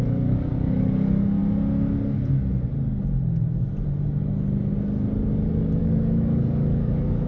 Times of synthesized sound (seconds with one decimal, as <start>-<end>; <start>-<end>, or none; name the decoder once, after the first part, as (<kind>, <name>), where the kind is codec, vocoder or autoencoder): 0.0-1.4 (codec, DAC); 5.8-7.3